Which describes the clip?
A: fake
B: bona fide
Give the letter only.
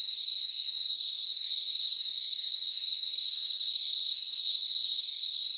A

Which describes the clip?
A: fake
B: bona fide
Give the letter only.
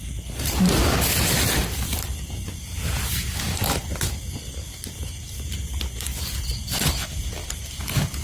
B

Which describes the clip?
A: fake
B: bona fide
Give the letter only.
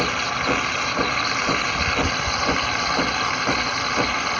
B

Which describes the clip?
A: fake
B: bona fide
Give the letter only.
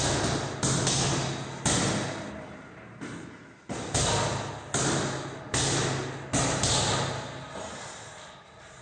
B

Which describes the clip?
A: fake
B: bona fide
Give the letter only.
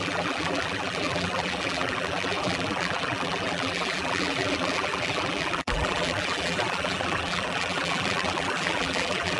A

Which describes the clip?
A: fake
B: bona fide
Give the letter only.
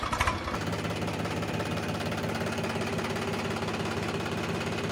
B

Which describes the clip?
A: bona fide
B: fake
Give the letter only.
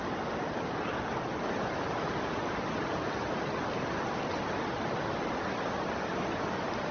A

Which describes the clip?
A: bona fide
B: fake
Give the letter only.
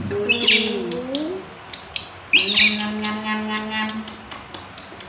A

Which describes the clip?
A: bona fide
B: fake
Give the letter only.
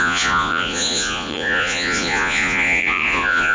B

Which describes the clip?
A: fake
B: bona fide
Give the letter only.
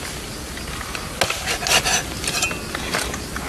B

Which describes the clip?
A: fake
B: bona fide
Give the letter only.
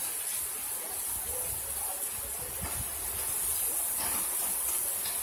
B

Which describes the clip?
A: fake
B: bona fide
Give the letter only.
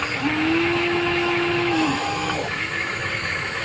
A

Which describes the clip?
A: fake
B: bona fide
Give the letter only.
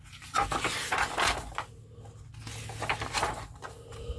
B